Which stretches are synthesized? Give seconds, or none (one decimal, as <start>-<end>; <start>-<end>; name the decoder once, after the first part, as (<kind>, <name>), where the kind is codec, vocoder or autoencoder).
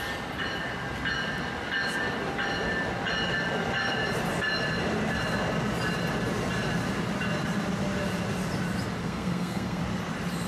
9.0-9.8 (codec, SNAC)